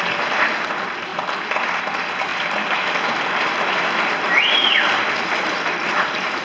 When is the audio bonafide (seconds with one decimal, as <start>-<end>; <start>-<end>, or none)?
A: 0.0-2.3